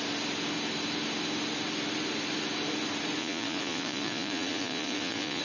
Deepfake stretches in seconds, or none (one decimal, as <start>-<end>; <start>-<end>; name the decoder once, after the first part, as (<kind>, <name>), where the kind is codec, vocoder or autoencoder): 3.2-5.4 (vocoder, Vocos)